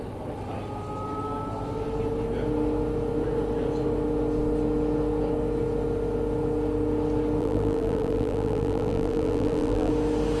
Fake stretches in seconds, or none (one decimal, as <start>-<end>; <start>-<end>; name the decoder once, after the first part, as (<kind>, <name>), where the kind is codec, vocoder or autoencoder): 7.4-9.9 (vocoder, BigVGAN v2)